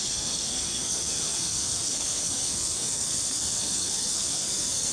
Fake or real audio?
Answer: fake